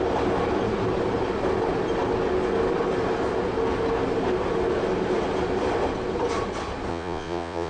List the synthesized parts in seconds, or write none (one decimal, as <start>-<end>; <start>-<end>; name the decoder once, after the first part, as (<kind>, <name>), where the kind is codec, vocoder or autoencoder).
6.9-7.7 (vocoder, Vocos)